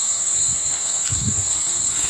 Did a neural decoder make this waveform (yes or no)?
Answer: yes